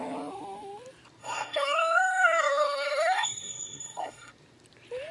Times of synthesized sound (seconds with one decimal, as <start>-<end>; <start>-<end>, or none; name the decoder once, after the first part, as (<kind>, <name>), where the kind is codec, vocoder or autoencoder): 1.2-4.3 (codec, SNAC)